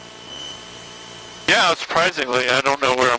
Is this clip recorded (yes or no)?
no